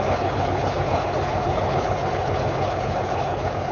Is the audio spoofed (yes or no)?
yes